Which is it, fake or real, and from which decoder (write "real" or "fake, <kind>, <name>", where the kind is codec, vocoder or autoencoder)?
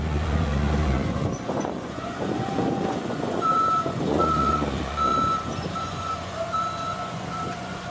fake, vocoder, Vocos